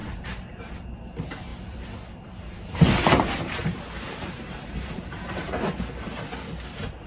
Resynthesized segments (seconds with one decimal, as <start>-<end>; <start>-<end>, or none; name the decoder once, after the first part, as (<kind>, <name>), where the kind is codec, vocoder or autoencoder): 0.0-0.6 (vocoder, BigVGAN v2); 1.5-5.8